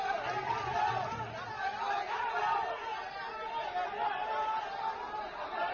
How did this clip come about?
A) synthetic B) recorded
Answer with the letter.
B